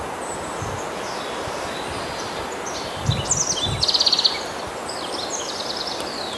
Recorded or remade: recorded